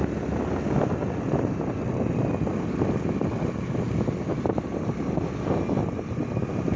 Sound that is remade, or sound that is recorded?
recorded